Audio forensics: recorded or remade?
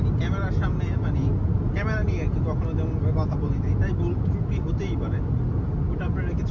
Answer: recorded